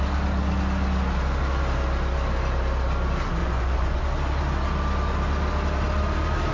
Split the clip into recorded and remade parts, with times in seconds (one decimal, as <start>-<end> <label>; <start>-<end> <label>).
0.0-3.4 recorded; 3.4-4.0 remade; 4.0-6.5 recorded